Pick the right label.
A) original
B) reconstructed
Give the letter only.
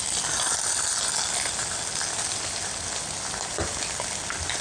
A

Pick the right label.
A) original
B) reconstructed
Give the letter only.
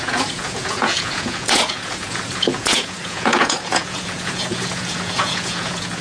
B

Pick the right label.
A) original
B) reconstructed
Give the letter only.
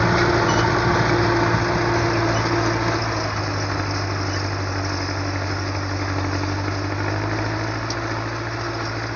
A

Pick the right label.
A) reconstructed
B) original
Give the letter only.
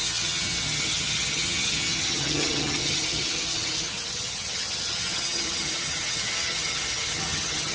A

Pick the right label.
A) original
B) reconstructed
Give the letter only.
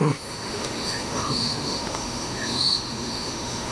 B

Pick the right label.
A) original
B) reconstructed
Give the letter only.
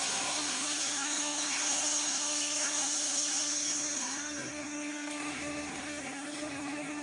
B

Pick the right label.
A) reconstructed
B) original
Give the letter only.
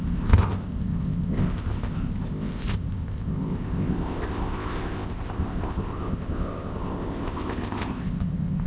A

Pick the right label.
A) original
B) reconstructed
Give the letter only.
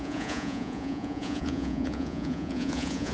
B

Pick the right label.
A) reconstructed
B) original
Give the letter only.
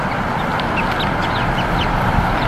B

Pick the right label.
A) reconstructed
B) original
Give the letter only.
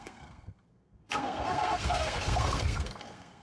A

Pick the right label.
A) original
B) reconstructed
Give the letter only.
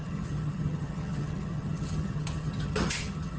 B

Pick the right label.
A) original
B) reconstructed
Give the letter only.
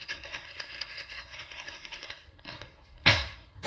B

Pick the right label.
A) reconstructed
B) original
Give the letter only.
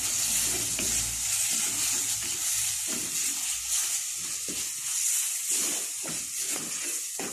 B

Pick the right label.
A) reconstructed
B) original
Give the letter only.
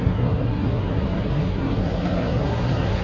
A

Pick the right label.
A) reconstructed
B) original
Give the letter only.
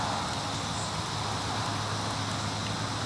B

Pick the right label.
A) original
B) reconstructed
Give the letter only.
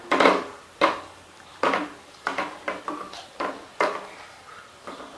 A